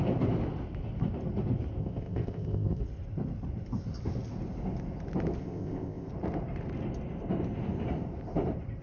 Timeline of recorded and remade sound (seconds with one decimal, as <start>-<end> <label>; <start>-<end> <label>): 0.0-1.8 recorded; 1.8-2.8 remade; 2.8-5.4 recorded; 5.4-6.1 remade; 6.1-8.8 recorded